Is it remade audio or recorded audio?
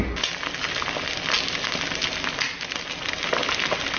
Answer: recorded